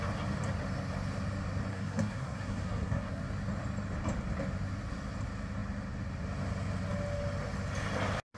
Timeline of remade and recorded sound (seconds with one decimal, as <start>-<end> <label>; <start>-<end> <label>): 0.0-1.7 recorded; 1.7-3.2 remade; 3.2-8.4 recorded